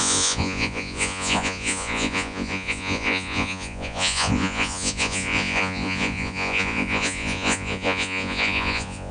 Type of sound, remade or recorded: remade